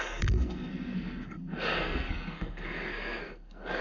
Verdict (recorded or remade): remade